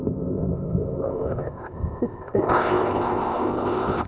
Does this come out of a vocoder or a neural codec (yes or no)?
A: yes